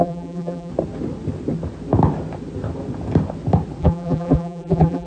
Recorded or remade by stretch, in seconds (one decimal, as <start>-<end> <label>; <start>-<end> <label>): 0.0-0.7 remade; 0.7-3.8 recorded; 3.8-5.1 remade